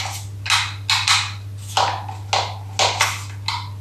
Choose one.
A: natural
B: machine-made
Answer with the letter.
A